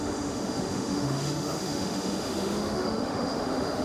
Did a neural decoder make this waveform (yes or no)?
yes